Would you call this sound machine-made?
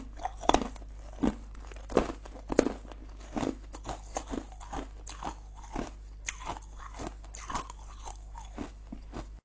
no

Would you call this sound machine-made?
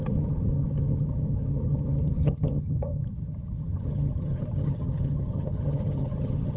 yes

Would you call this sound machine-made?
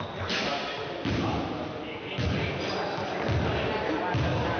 no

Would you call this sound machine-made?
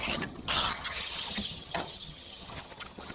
yes